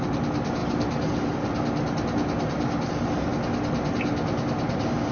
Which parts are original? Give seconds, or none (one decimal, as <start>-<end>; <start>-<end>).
0.0-5.1